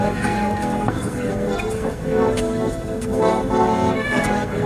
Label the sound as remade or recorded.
remade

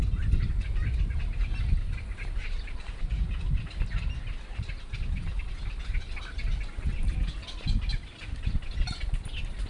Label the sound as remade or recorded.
recorded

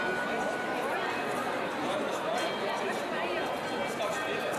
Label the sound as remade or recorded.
recorded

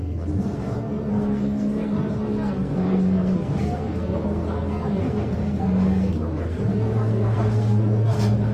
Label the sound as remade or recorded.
remade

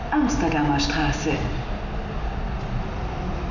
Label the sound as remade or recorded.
recorded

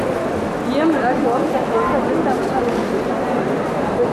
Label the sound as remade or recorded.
recorded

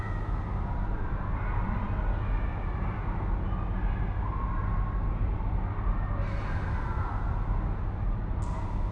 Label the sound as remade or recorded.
recorded